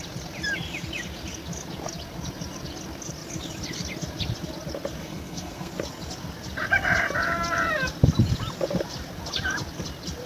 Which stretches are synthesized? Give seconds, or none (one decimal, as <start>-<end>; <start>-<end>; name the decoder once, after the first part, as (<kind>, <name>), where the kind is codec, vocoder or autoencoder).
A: 5.0-5.7 (codec, SNAC)

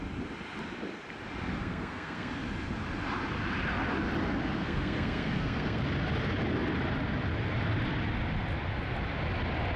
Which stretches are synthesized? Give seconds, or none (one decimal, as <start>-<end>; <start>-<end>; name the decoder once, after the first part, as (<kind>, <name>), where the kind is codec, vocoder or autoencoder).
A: 1.6-2.3 (codec, SNAC); 4.6-5.8

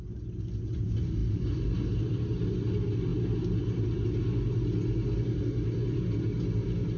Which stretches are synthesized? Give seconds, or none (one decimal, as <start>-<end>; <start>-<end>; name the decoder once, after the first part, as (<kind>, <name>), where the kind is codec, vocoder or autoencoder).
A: none

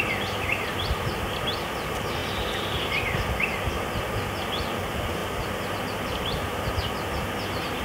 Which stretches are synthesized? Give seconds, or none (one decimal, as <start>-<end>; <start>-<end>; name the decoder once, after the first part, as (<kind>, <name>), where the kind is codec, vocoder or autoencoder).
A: none

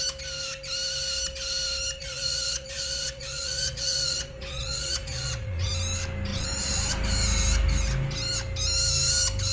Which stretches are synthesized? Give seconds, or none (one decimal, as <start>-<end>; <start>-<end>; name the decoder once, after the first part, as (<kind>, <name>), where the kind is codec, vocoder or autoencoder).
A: 2.0-5.7 (vocoder, Vocos); 6.3-6.8

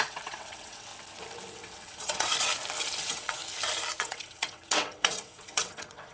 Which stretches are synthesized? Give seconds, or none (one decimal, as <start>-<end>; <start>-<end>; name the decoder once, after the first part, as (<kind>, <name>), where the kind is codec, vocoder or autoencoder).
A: 0.0-0.9 (vocoder, WaveNeXt); 1.5-2.3; 3.0-3.4; 4.0-6.1

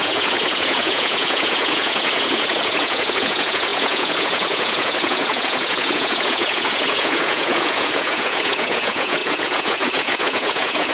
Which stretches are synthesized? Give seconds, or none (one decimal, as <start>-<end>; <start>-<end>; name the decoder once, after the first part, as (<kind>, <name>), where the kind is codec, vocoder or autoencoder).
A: 0.0-10.9 (vocoder, Vocos)